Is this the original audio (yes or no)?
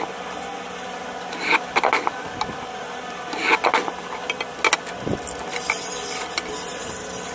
yes